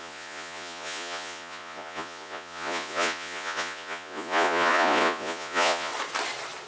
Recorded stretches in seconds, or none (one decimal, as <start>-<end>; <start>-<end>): 5.9-6.7